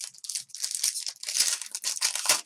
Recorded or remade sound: recorded